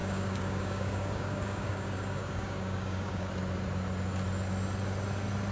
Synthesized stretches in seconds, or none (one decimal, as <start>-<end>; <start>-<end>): 0.0-3.3